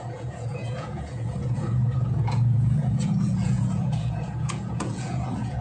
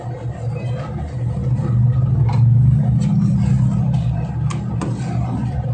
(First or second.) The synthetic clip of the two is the first